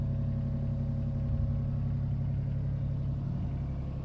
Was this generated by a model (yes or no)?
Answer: no